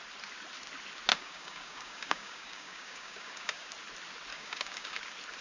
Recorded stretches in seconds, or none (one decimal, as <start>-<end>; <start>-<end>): 0.0-1.1; 3.7-4.3; 5.0-5.4